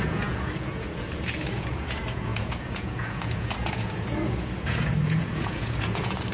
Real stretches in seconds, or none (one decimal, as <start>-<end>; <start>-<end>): none